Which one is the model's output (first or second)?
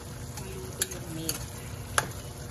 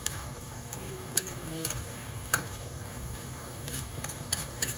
second